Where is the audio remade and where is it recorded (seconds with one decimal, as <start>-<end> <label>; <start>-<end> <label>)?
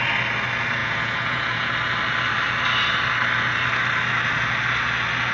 0.0-0.8 recorded; 0.8-1.7 remade; 1.7-5.3 recorded